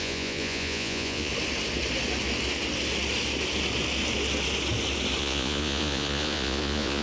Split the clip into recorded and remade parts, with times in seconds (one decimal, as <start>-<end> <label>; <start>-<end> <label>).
0.0-1.3 remade; 1.3-5.2 recorded; 5.2-7.0 remade